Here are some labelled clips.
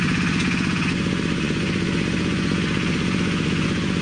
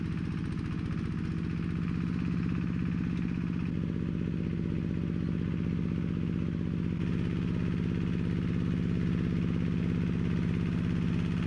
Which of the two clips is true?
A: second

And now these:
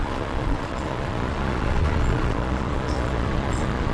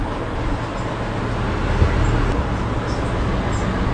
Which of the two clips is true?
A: second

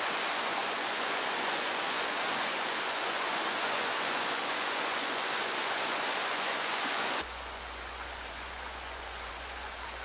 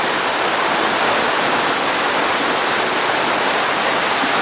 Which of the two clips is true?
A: second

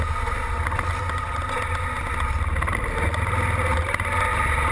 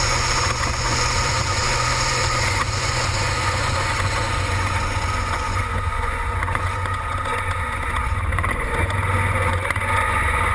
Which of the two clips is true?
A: first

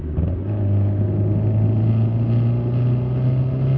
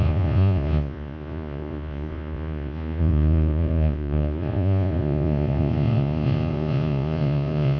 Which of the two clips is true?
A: first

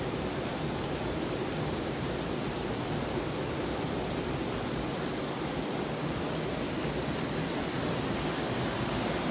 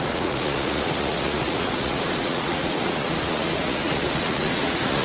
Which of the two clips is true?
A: first